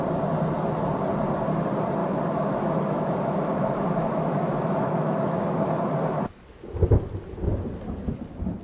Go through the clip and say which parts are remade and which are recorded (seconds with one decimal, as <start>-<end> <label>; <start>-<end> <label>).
0.0-2.0 recorded; 2.0-5.7 remade; 5.7-8.6 recorded